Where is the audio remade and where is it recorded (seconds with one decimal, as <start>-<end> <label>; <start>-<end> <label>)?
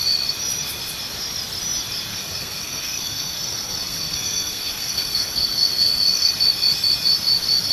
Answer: 0.0-2.1 recorded; 2.1-6.3 remade; 6.3-7.7 recorded